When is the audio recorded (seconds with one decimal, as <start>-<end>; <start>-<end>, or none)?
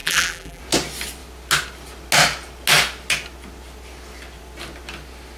0.6-5.4